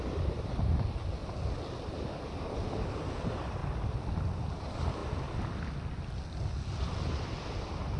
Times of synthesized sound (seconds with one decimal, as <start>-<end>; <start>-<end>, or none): 0.0-1.2; 3.2-3.6; 4.2-5.0